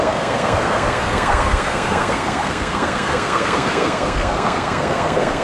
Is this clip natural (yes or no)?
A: no